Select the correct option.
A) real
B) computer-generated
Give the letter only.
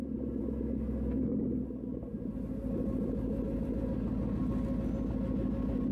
A